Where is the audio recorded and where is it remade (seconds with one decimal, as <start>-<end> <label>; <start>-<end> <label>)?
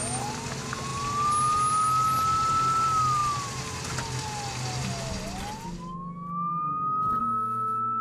0.0-7.2 recorded; 7.2-8.0 remade